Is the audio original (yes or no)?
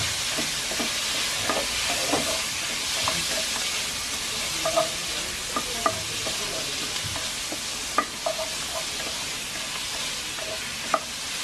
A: yes